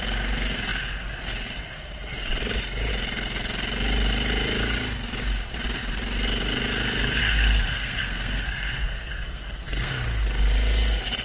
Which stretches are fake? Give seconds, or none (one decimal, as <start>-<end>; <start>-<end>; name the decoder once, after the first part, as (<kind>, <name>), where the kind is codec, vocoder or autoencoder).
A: 7.2-9.9 (codec, SNAC)

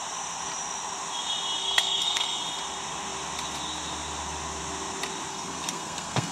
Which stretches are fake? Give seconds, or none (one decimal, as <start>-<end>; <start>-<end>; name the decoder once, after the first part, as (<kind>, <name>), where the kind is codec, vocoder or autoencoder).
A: 1.6-2.4 (codec, SNAC); 5.3-6.3

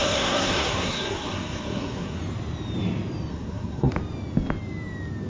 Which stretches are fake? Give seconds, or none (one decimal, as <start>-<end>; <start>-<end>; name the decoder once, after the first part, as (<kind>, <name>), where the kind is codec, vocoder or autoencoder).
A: 0.0-2.2 (codec, SNAC); 3.3-3.9

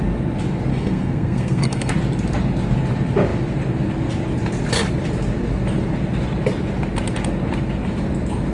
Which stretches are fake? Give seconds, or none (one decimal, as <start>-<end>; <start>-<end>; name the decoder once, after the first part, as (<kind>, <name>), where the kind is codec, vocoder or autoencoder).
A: 0.7-1.9 (codec, SNAC)